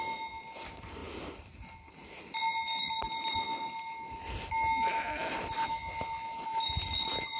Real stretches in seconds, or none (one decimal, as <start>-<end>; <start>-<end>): 0.0-7.4